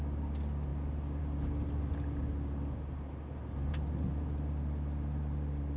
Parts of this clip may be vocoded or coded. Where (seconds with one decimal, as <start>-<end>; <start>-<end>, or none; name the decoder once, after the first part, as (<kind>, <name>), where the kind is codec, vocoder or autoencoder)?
none